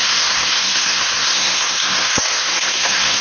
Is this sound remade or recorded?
remade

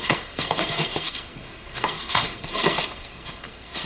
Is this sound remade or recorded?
remade